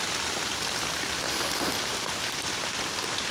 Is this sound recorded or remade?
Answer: recorded